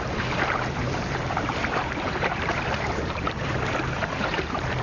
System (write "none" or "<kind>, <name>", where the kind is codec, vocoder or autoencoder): vocoder, BigVGAN v2